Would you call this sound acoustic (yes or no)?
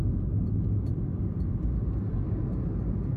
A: yes